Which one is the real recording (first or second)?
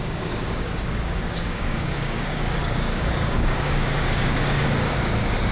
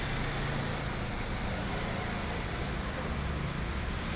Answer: second